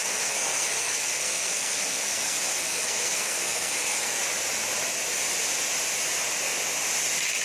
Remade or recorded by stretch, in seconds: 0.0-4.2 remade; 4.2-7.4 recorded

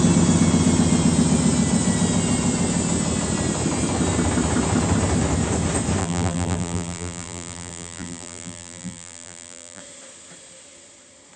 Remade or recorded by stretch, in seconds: 0.0-6.0 recorded; 6.0-9.8 remade; 9.8-11.4 recorded

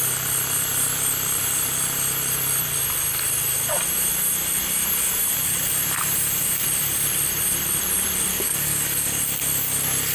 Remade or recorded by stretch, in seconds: 0.0-8.3 recorded; 8.3-9.2 remade; 9.2-10.1 recorded

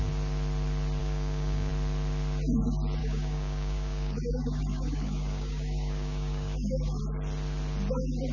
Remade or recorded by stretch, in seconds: 0.0-1.0 recorded; 1.0-1.7 remade; 1.7-3.0 recorded; 3.0-7.0 remade; 7.0-8.3 recorded

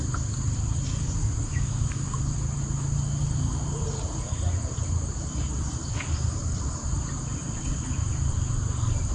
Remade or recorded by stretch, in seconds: 0.0-1.5 recorded; 1.5-2.2 remade; 2.2-9.1 recorded

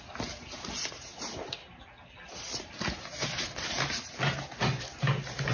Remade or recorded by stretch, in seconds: 0.0-5.5 recorded